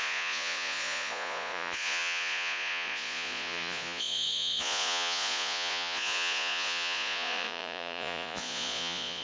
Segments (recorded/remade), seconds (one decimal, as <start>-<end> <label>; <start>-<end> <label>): 0.0-9.2 remade